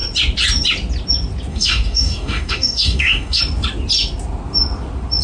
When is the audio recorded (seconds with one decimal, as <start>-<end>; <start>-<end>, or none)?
0.0-1.5; 3.4-5.2